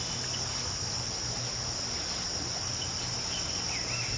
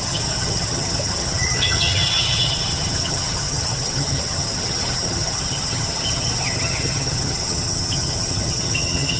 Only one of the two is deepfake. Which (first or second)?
second